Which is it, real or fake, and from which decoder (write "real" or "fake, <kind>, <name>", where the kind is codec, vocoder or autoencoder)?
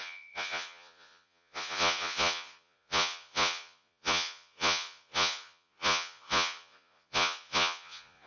fake, vocoder, Vocos